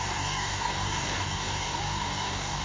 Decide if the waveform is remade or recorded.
remade